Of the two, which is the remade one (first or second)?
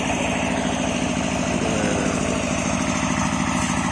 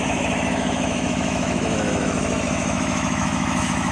second